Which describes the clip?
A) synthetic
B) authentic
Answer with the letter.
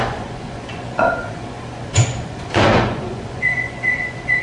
A